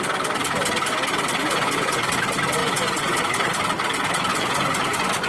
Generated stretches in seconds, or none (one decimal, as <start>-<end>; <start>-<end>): 1.4-2.1; 2.6-3.2; 4.3-5.3